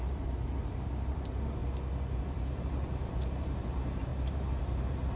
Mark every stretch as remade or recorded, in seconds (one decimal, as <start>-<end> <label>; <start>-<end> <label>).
0.0-1.6 remade; 1.6-2.2 recorded; 2.2-5.2 remade